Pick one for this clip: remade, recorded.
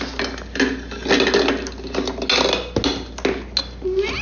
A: recorded